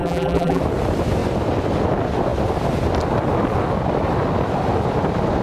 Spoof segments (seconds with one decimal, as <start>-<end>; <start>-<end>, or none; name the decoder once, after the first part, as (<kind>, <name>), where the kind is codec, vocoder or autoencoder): 0.0-0.6 (vocoder, BigVGAN v2)